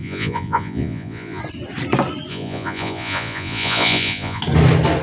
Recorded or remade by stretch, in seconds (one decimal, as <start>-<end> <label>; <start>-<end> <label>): 0.0-1.4 remade; 1.4-2.3 recorded; 2.3-4.4 remade; 4.4-5.0 recorded